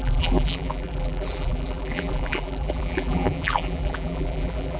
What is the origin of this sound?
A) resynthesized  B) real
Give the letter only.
A